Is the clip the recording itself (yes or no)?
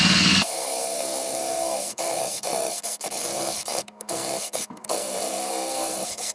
no